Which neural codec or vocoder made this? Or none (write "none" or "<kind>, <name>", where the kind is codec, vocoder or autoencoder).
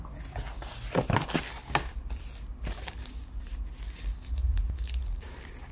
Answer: none